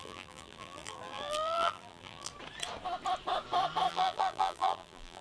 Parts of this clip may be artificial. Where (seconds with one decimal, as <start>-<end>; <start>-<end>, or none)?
0.0-2.3; 3.9-5.2